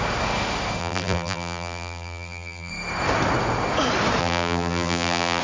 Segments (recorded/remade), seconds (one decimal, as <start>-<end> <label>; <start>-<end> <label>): 0.0-0.8 recorded; 0.8-2.7 remade; 2.7-4.2 recorded; 4.2-5.4 remade